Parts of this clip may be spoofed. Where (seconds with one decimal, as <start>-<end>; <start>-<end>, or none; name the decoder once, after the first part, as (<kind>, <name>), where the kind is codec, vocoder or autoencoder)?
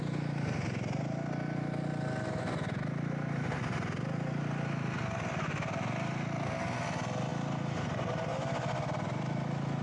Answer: none